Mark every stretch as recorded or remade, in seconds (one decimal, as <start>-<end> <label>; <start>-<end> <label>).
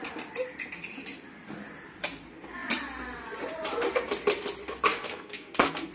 0.0-4.9 recorded; 4.9-5.9 remade